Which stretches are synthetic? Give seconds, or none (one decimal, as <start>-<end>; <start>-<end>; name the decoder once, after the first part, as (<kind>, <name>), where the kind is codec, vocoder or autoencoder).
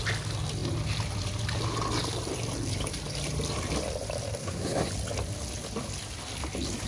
4.4-4.9 (codec, SNAC)